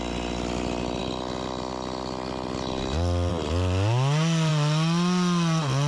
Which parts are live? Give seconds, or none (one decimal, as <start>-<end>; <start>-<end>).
0.0-5.9